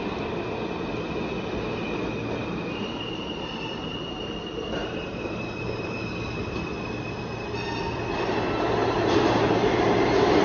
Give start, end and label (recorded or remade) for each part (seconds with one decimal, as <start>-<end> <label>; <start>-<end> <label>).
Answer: 0.0-2.4 recorded; 2.4-4.2 remade; 4.2-4.8 recorded; 4.8-5.9 remade; 5.9-8.8 recorded; 8.8-10.4 remade